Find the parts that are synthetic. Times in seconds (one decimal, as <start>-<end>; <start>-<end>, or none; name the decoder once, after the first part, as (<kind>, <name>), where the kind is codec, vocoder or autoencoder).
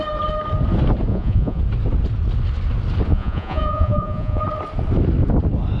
1.1-1.6 (vocoder, Vocos); 3.1-4.4